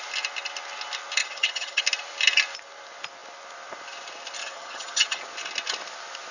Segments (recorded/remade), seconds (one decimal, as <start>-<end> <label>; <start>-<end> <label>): 0.0-1.2 recorded; 1.2-1.8 remade; 1.8-4.4 recorded; 4.4-5.2 remade; 5.2-6.3 recorded